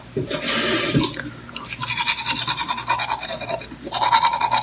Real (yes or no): yes